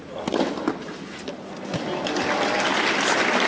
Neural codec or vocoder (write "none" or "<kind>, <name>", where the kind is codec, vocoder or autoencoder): none